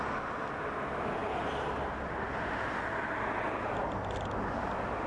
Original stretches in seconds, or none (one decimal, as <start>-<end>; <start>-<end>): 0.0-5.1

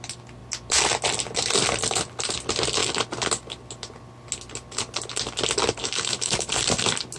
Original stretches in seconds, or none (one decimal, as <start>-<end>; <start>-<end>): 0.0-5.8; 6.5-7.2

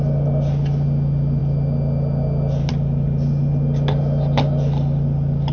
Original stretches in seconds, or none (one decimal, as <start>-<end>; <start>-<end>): 0.0-5.5

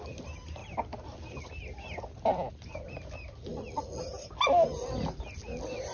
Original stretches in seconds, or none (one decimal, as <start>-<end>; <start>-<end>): 0.0-5.9

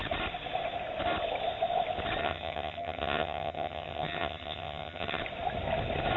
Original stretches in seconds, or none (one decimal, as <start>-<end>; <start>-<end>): 0.0-2.2; 5.2-6.2

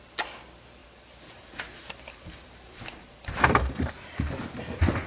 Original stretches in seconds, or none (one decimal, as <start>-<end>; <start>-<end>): 0.0-0.8; 3.9-5.1